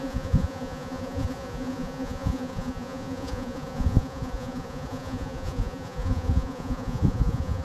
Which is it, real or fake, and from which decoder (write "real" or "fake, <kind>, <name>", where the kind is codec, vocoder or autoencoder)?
fake, vocoder, Vocos